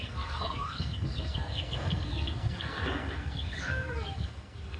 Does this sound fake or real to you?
fake